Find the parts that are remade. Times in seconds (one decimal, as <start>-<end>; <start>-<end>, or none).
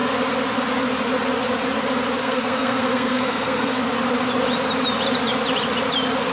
2.2-3.8